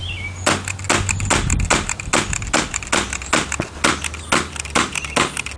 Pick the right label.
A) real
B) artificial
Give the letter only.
A